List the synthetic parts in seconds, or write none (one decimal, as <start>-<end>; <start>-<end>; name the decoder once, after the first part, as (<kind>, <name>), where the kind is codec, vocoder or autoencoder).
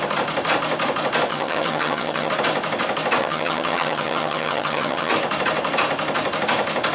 1.3-2.3 (vocoder, HiFi-GAN); 3.2-5.1